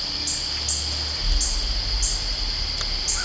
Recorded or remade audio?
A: recorded